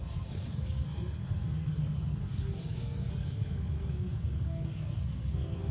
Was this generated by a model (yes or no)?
yes